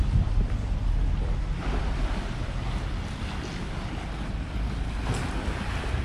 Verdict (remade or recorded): recorded